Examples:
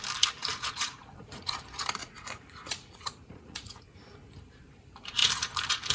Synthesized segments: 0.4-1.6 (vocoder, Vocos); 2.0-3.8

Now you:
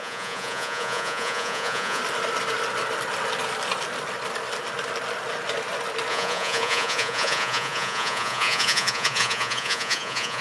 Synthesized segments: 0.0-2.0 (vocoder, Vocos); 6.1-10.4